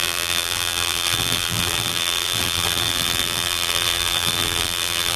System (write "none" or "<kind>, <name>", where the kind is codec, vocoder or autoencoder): vocoder, BigVGAN v2